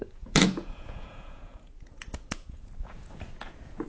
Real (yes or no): no